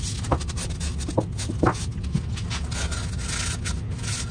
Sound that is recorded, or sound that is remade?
recorded